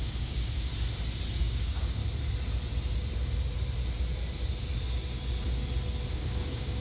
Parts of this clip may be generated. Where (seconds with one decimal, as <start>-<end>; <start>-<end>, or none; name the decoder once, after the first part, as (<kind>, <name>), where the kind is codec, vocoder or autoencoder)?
0.0-0.7 (codec, DAC); 1.4-2.0; 6.1-6.8